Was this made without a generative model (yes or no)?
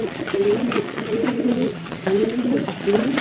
no